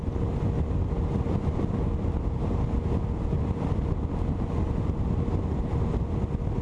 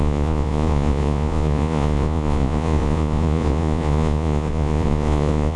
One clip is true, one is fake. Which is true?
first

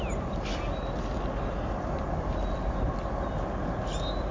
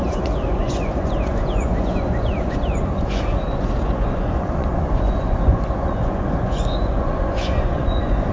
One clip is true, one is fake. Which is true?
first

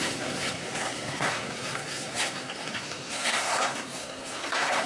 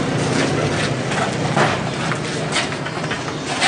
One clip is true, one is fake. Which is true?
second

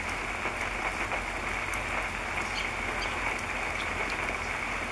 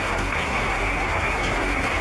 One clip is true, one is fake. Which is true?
first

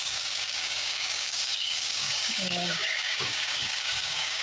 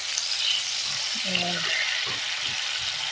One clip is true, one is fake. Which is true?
second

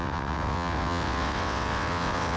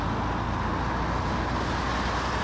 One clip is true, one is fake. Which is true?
second